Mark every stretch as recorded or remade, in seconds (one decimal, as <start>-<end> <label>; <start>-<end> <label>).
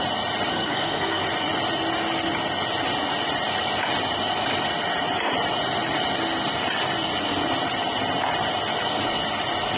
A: 0.0-0.5 recorded; 0.5-1.2 remade; 1.2-9.8 recorded